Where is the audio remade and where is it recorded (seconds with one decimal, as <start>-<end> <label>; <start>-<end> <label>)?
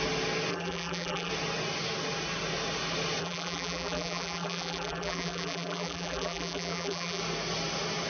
0.0-0.5 recorded; 0.5-1.3 remade; 1.3-3.2 recorded; 3.2-7.2 remade; 7.2-8.1 recorded